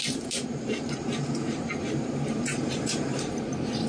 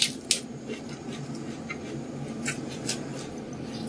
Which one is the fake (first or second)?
first